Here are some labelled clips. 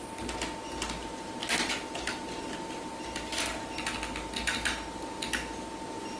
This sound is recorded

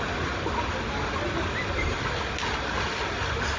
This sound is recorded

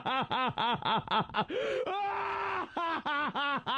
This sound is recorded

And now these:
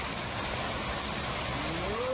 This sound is recorded